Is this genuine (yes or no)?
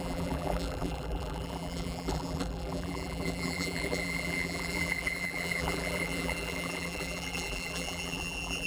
no